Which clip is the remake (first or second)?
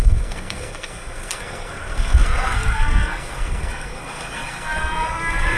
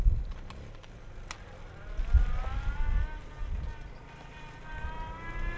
first